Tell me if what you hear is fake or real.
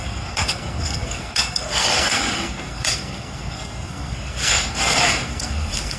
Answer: fake